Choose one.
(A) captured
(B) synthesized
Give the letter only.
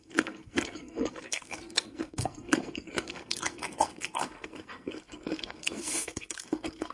B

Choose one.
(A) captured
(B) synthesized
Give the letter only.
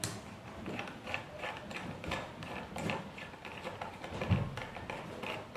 A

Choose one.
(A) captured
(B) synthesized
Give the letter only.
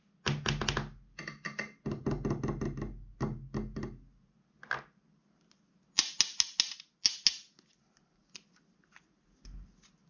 A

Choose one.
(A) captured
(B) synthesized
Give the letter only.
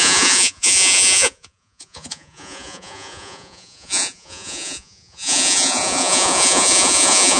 B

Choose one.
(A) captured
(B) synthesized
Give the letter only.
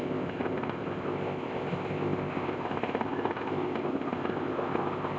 B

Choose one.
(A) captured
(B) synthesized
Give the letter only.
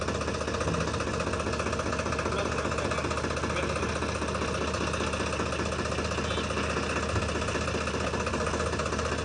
A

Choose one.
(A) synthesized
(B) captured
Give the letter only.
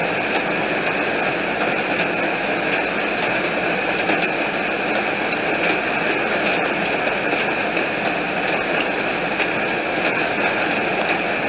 B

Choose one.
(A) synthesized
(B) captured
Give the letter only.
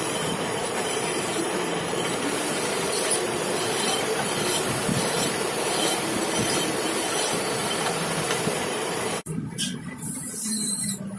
A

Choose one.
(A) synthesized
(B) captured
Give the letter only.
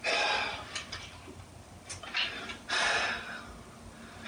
B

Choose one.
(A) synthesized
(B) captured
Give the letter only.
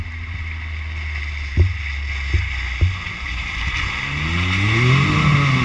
B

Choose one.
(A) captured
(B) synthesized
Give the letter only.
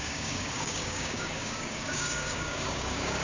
B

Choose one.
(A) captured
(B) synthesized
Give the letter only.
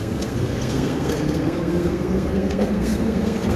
B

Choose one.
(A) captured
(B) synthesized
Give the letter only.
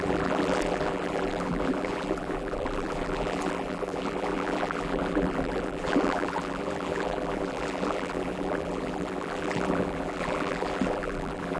B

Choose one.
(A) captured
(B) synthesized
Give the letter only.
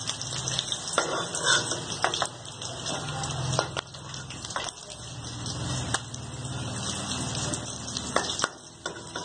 A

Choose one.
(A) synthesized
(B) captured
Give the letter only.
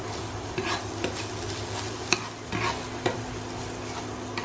B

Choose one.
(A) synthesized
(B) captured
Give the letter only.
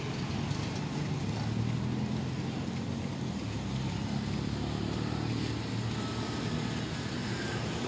B